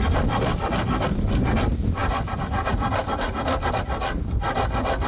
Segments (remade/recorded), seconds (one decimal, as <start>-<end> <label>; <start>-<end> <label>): 0.0-5.1 recorded